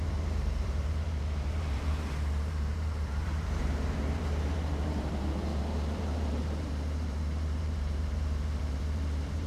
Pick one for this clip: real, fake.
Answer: fake